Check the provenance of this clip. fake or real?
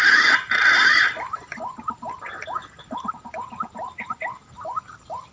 real